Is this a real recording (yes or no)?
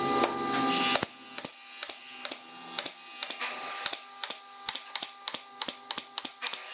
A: yes